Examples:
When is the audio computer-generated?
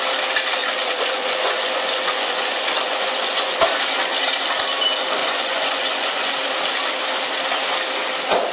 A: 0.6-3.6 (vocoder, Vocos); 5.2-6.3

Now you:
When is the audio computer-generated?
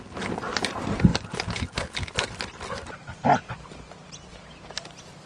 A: none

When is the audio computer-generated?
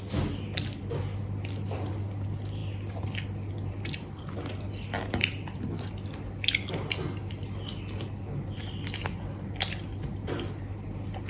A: none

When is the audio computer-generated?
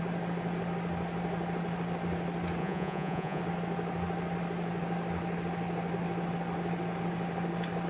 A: 2.6-3.4 (vocoder, Vocos)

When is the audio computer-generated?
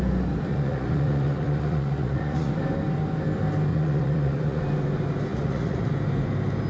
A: 0.5-2.5 (vocoder, Vocos); 3.7-4.6; 5.3-5.9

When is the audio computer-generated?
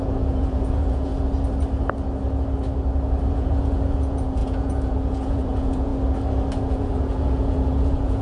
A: 0.0-1.1 (vocoder, Vocos); 3.3-5.9; 6.6-8.2